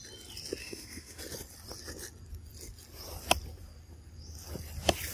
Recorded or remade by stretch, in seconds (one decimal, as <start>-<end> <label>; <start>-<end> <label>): 0.0-0.6 recorded; 0.6-1.2 remade; 1.2-5.1 recorded